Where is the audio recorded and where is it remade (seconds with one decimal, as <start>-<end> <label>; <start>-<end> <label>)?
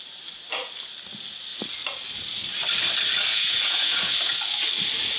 0.0-3.3 recorded; 3.3-4.4 remade; 4.4-5.2 recorded